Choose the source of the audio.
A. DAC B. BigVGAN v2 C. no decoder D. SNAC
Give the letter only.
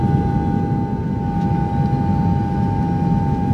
C